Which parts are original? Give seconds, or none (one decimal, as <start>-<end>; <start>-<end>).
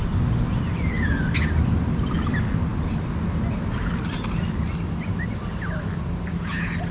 0.0-6.9